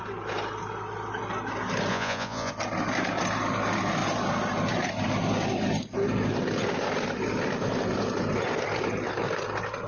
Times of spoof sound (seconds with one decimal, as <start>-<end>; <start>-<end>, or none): 1.9-2.5